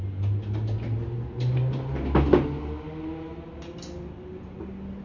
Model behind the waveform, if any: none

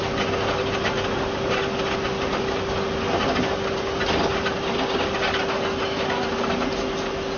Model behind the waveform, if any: none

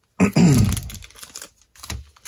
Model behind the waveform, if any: none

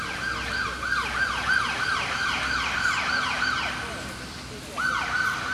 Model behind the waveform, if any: none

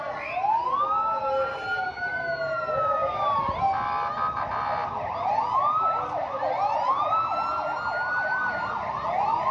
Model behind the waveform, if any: none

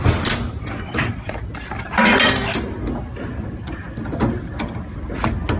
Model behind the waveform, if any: none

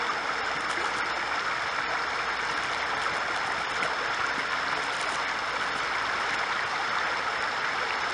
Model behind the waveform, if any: none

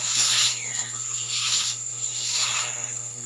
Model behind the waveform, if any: codec, SNAC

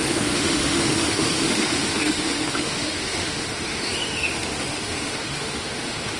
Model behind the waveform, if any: autoencoder, DAC-VAE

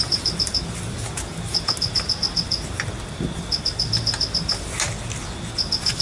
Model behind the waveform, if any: none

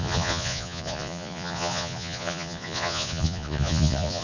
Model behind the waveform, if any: vocoder, Vocos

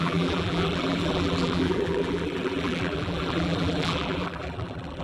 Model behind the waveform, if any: vocoder, BigVGAN v2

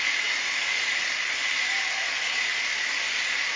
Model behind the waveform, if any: none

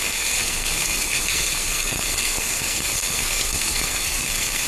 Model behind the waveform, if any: codec, SNAC